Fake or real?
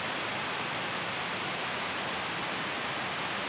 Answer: real